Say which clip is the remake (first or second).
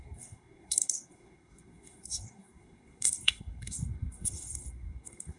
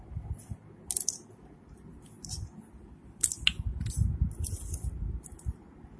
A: first